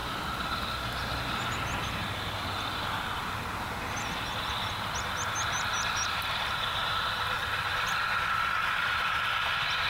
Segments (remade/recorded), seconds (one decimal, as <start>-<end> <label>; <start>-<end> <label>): 0.0-9.9 recorded